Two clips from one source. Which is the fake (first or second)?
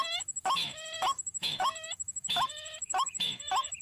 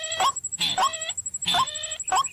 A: first